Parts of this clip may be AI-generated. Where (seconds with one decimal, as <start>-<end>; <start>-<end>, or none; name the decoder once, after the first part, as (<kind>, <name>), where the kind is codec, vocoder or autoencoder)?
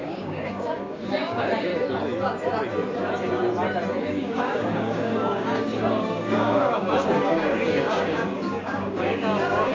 0.0-1.7 (codec, DAC); 4.0-9.7